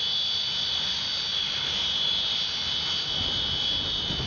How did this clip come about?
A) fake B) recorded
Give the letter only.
B